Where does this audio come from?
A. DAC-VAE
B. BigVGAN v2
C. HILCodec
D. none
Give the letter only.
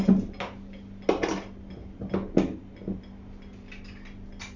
D